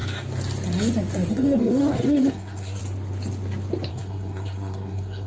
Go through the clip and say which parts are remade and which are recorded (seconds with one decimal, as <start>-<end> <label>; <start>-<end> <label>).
0.0-1.3 recorded; 1.3-2.8 remade; 2.8-3.9 recorded; 3.9-5.3 remade